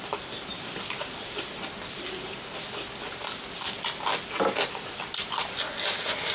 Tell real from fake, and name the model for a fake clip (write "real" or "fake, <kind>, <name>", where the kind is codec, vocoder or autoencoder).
real